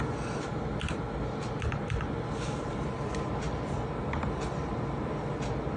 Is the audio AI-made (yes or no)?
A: no